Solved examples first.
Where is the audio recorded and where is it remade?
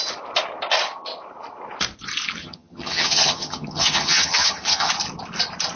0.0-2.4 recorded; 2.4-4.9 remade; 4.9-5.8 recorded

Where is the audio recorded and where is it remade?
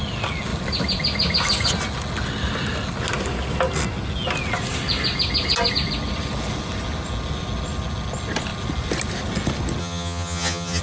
0.0-9.8 recorded; 9.8-10.8 remade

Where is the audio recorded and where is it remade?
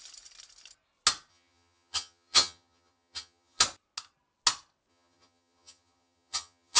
0.0-1.3 recorded; 1.3-3.6 remade; 3.6-4.9 recorded; 4.9-6.8 remade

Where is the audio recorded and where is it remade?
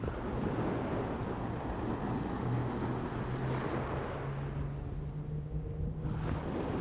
0.0-6.8 recorded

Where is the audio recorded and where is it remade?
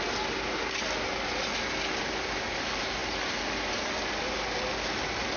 0.0-5.4 recorded